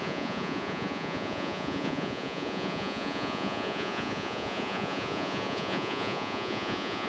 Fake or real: fake